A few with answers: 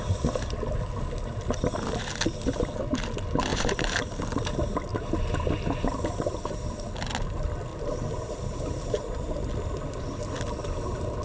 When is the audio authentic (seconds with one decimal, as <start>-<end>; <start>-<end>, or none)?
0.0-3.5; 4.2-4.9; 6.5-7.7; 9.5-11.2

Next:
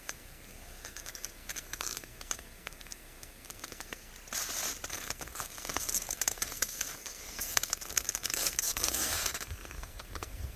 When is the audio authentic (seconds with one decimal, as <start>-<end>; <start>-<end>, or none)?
4.1-4.9

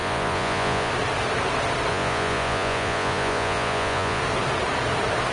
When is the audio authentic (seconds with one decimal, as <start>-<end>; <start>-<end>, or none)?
0.9-1.9; 4.2-5.3